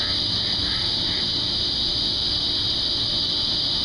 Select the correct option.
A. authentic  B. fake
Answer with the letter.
A